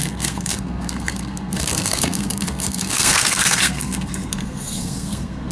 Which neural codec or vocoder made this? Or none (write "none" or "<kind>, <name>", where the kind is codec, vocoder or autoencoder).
codec, SNAC